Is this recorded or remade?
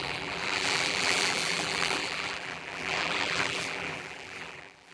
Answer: remade